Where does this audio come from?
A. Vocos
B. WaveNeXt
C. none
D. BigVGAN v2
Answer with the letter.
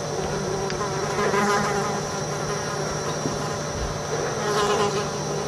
C